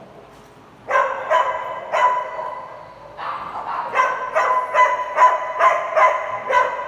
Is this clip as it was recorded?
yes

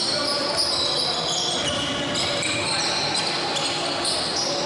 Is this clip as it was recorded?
yes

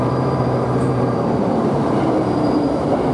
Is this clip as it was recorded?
no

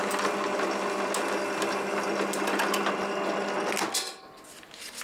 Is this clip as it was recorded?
yes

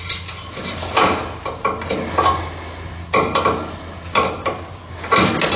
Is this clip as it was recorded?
yes